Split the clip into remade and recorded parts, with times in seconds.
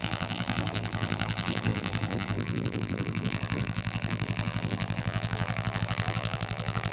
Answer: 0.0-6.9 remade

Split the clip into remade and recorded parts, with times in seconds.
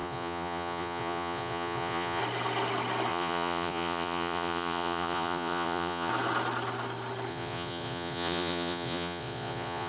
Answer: 0.0-2.2 remade; 2.2-3.1 recorded; 3.1-6.1 remade; 6.1-7.3 recorded; 7.3-9.9 remade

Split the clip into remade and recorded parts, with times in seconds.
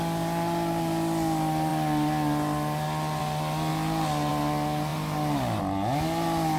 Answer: 0.0-6.6 recorded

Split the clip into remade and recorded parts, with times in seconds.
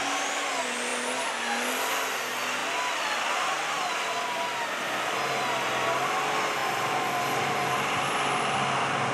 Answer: 0.0-9.1 recorded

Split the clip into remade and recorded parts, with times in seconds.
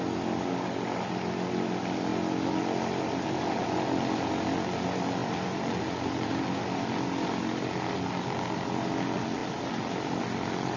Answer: 0.0-5.2 recorded; 5.2-6.3 remade; 6.3-10.8 recorded